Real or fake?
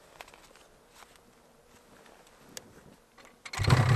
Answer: real